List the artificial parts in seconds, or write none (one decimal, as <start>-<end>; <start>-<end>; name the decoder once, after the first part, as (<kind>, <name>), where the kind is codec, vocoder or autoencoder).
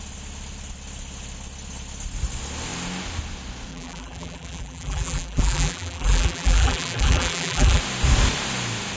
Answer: 3.7-7.8 (vocoder, BigVGAN v2)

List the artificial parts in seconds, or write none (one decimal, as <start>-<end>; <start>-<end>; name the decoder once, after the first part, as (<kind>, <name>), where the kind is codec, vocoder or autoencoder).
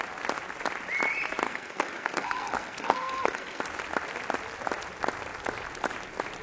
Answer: 1.4-3.6 (codec, SNAC)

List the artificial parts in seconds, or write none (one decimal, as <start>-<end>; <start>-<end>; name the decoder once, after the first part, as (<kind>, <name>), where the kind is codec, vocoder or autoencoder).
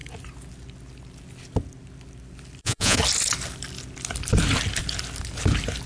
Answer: 2.6-3.0 (vocoder, Vocos)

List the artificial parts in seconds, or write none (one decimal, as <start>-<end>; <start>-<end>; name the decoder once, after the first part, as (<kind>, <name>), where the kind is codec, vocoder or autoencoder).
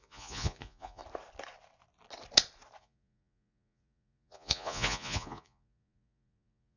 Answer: 0.0-1.0 (vocoder, Vocos); 2.8-6.8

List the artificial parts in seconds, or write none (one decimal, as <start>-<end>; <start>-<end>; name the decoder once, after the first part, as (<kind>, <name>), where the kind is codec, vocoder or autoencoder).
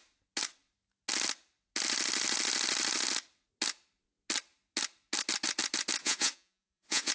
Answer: 6.0-7.1 (vocoder, Vocos)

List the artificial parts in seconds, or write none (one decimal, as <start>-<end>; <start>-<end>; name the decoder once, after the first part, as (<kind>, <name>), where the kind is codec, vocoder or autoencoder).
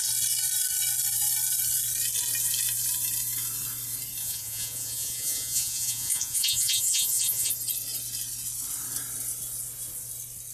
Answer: 4.2-7.5 (vocoder, Vocos)